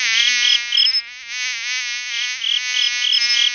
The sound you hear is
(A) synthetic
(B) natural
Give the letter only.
B